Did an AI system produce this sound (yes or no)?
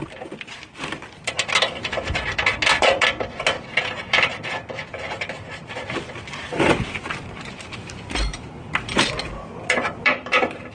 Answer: yes